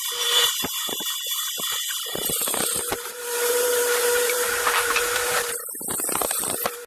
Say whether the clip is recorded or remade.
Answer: remade